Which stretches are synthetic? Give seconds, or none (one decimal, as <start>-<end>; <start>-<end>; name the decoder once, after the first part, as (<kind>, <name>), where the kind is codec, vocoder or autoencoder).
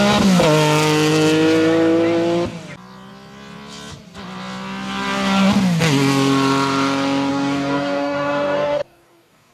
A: 7.3-9.5 (codec, DAC)